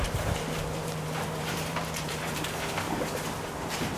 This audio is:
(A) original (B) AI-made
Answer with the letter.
B